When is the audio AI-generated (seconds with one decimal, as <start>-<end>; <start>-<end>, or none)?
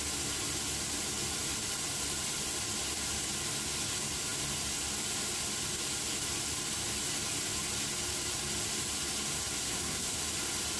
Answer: 9.6-10.2